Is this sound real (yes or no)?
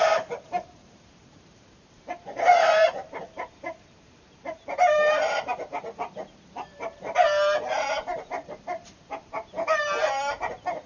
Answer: no